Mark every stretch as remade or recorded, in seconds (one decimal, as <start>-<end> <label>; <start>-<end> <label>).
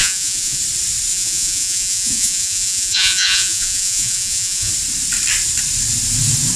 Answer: 0.0-0.6 remade; 0.6-1.1 recorded; 1.1-4.7 remade; 4.7-6.6 recorded